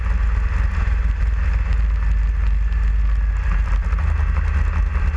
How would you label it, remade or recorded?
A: recorded